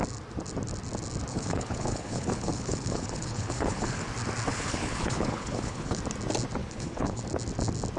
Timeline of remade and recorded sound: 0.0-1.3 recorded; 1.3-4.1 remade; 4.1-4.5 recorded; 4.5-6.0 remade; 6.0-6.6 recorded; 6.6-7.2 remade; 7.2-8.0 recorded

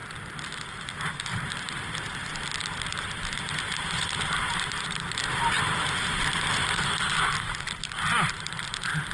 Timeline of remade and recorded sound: 0.0-9.1 recorded